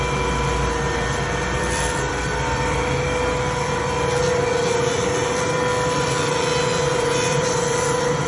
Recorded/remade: remade